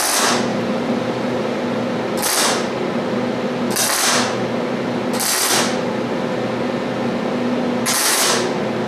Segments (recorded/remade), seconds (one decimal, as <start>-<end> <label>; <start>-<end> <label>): 0.0-0.5 recorded; 0.5-1.6 remade; 1.6-8.9 recorded

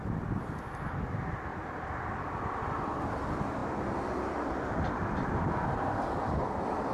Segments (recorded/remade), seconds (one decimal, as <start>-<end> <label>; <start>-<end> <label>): 0.0-1.5 recorded; 1.5-2.9 remade; 2.9-6.9 recorded

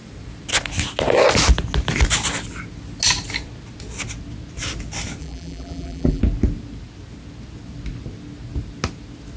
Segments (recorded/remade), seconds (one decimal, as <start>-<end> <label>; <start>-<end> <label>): 0.0-5.2 recorded; 5.2-6.2 remade; 6.2-9.4 recorded

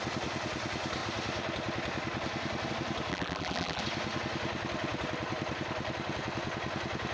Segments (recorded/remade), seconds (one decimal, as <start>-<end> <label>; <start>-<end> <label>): 0.0-3.1 recorded; 3.1-3.8 remade; 3.8-7.1 recorded

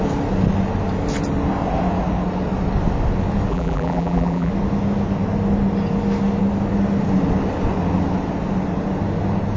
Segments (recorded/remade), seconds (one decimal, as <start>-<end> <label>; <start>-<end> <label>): 0.0-3.5 recorded; 3.5-4.5 remade; 4.5-9.6 recorded